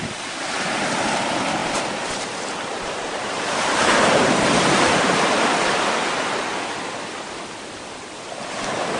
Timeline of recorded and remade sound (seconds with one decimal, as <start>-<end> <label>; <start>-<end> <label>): 0.0-1.6 recorded; 1.6-5.2 remade; 5.2-9.0 recorded